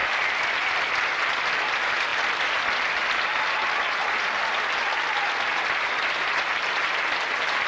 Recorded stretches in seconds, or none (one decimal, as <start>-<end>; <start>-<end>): 0.0-7.7